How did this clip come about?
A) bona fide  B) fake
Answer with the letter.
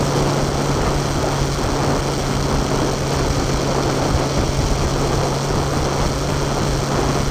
A